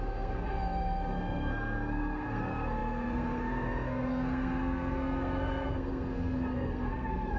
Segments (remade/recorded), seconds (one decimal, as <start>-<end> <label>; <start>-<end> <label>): 0.0-7.4 remade